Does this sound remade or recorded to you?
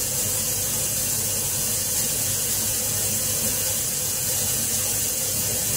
remade